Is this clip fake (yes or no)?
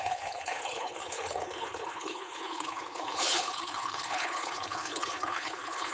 yes